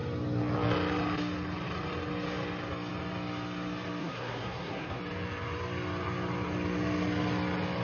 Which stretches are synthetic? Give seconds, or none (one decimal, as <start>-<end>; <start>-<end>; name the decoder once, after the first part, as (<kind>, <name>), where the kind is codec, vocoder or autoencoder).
4.0-5.0 (codec, SNAC)